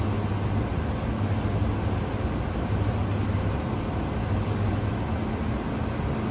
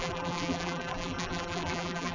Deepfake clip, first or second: second